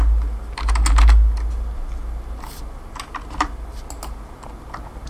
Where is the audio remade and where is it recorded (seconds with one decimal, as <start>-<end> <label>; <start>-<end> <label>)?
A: 0.0-5.1 recorded